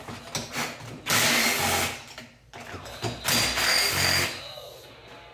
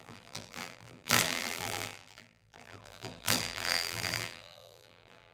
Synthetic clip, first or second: second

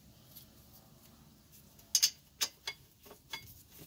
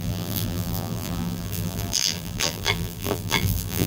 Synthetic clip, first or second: second